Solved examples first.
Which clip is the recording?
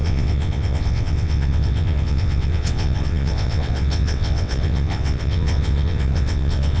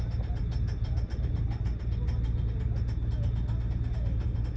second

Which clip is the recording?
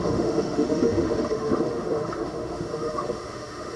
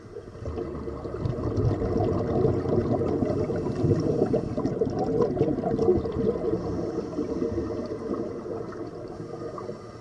second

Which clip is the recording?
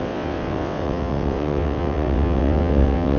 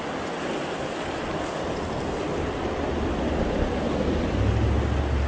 second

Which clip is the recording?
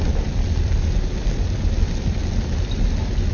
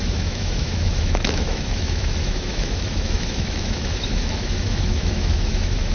first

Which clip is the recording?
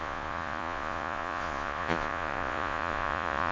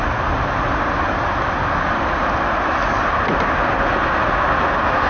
second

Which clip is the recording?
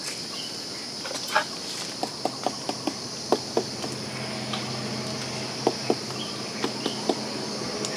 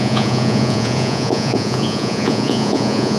first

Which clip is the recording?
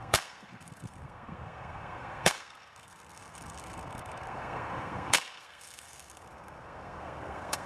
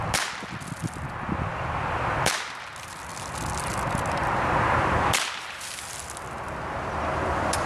second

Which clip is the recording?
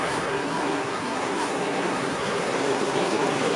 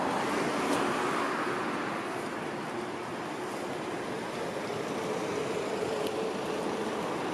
second